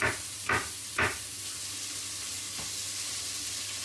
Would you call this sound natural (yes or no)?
yes